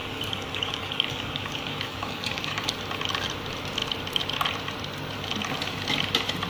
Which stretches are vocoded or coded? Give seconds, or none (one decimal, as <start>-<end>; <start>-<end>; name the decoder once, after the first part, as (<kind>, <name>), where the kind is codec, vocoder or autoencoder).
0.0-2.7 (codec, DAC)